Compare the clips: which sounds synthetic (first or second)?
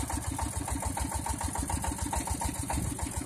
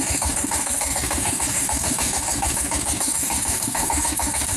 second